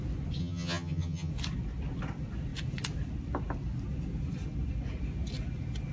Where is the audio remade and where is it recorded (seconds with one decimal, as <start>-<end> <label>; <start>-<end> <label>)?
0.0-0.4 recorded; 0.4-1.3 remade; 1.3-5.9 recorded